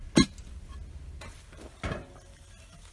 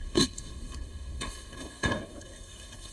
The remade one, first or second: second